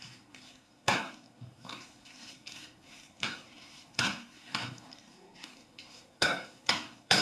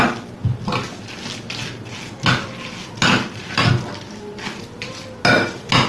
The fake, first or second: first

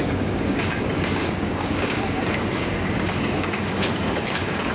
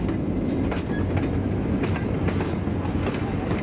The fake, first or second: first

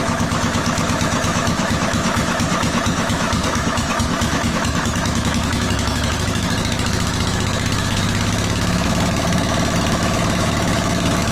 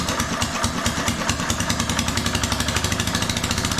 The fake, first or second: first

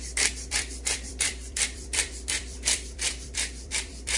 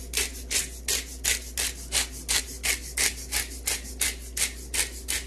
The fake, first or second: first